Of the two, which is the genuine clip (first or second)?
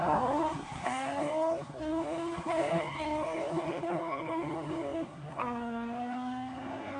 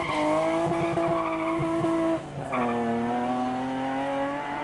second